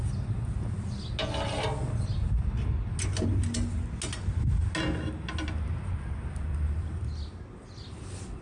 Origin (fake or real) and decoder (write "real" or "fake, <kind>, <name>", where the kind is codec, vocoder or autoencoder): real